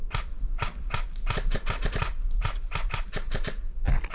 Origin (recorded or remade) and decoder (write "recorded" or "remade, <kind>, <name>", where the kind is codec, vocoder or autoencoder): recorded